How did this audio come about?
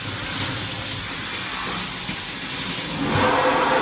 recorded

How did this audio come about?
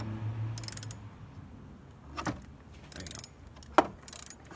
recorded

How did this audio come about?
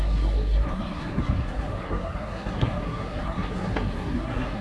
remade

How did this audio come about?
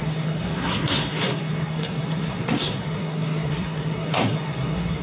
remade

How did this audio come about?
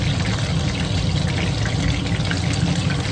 recorded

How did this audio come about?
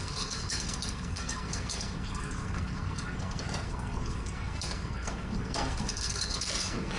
remade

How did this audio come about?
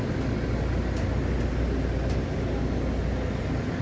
recorded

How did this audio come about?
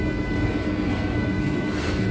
remade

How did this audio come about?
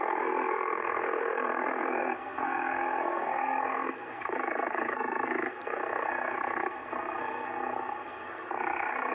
remade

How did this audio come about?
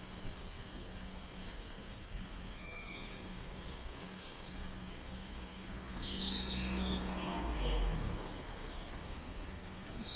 remade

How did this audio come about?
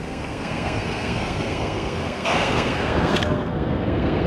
remade